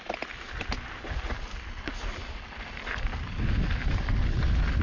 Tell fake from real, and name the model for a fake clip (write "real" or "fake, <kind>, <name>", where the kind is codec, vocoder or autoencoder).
real